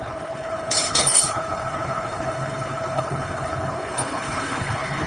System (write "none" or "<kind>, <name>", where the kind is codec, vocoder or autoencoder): codec, HILCodec